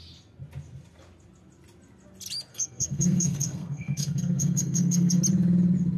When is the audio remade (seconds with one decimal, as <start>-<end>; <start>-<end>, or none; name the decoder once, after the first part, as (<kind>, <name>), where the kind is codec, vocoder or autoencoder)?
2.5-5.2 (codec, SNAC)